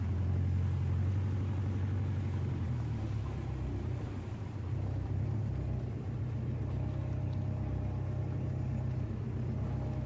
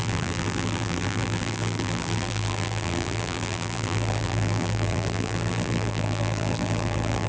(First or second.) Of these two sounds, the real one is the first